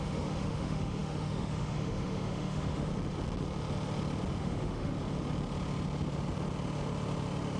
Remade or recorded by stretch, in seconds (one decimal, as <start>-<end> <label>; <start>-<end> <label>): 0.0-2.9 remade; 2.9-4.4 recorded; 4.4-4.9 remade; 4.9-7.6 recorded